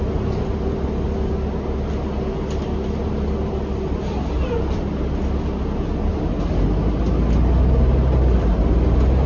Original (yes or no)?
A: yes